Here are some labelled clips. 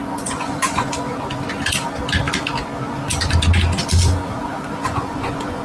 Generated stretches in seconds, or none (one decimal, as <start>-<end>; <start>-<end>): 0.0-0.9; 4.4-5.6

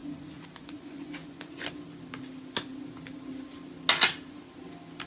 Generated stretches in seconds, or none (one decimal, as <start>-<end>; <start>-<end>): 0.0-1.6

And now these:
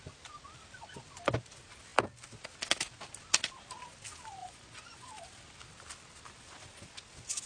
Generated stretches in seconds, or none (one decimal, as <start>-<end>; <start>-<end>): 4.4-5.1

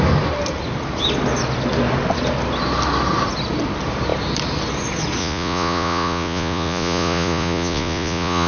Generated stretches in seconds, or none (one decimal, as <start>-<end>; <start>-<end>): 5.2-8.5